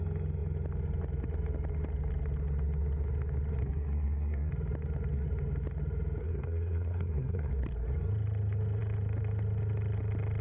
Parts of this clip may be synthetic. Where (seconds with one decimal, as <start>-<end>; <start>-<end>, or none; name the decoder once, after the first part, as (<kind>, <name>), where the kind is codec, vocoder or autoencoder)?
3.6-4.5 (codec, SNAC); 6.2-7.5